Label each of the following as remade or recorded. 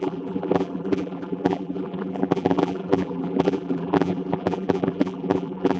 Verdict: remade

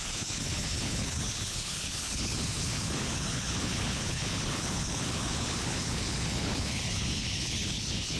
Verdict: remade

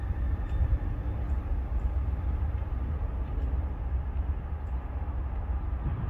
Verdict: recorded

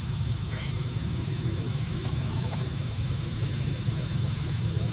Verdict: remade